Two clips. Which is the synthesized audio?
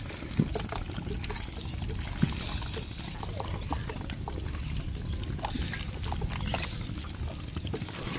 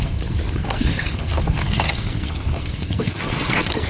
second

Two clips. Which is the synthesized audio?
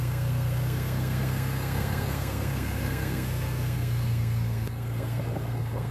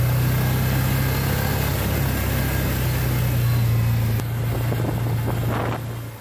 first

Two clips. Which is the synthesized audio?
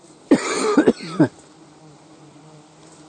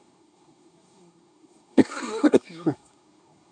second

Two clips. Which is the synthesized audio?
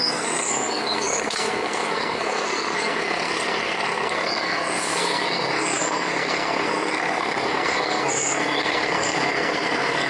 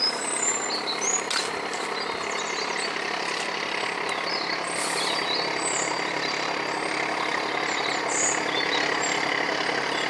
first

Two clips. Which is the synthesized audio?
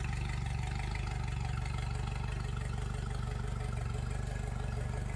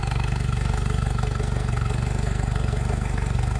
second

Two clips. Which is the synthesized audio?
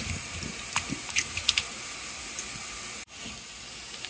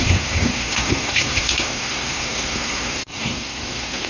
second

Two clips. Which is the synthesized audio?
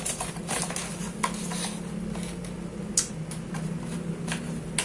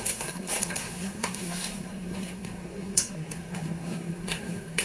second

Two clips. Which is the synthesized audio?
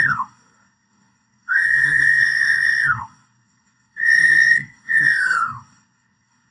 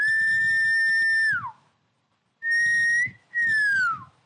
first